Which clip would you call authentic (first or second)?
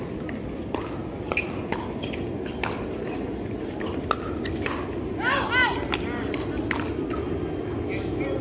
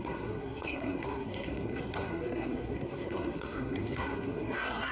first